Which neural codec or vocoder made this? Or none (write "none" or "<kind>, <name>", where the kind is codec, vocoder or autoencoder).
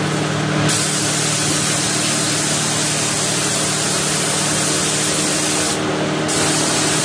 none